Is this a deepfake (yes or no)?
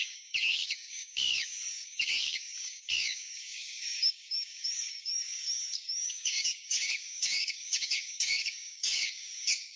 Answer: yes